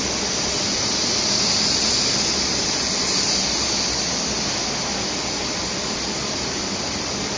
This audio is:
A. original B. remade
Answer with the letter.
A